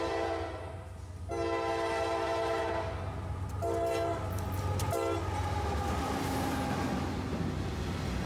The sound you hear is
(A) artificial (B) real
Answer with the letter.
B